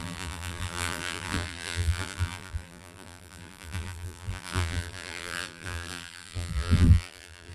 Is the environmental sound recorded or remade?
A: remade